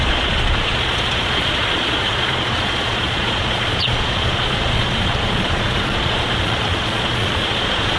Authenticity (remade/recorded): remade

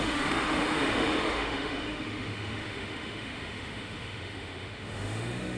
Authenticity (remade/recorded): remade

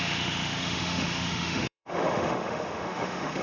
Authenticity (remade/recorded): remade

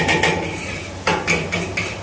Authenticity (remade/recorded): recorded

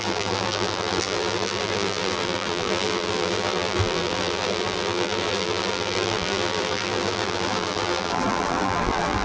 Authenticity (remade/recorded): remade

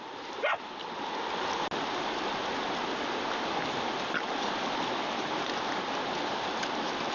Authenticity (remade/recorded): recorded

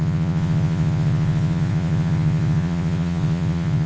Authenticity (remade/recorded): remade